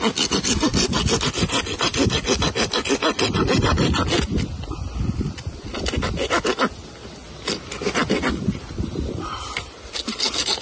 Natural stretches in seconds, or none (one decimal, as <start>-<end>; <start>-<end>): 0.0-10.6

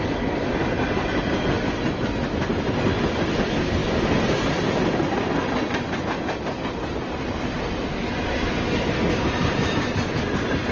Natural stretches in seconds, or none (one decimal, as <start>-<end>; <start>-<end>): 0.0-10.7

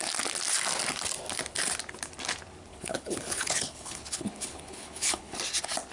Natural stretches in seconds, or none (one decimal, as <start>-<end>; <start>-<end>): 0.0-2.7; 5.4-5.9

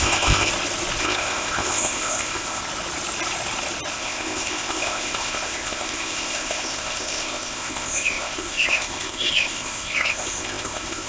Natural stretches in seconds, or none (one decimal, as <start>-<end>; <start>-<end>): 0.5-1.0; 2.6-3.9

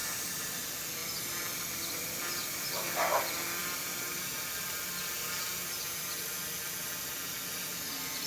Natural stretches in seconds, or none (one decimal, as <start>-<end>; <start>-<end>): 0.6-8.3

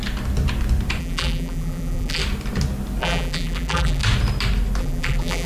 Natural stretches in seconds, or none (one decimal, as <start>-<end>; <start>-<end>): 0.0-1.0; 2.2-3.0; 4.0-4.8